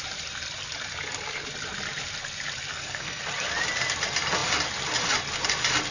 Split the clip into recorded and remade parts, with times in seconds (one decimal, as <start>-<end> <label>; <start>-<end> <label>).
0.0-2.7 recorded; 2.7-3.2 remade; 3.2-5.9 recorded